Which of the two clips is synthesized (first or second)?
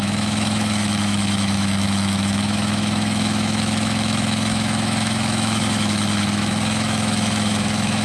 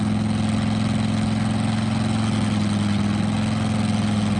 first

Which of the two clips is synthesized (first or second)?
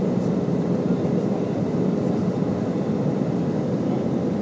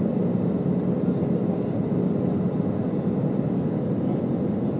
first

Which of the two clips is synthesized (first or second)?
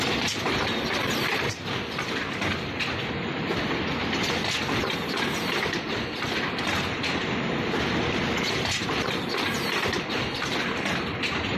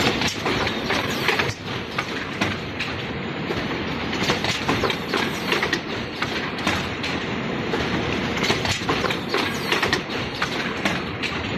second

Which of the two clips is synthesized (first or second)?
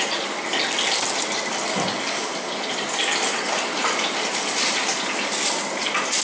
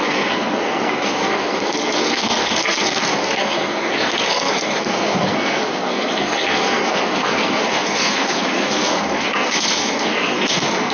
second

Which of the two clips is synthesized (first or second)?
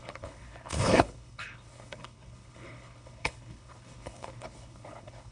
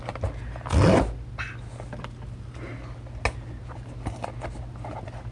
first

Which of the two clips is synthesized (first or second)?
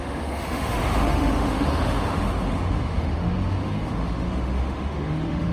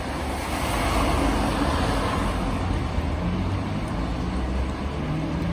first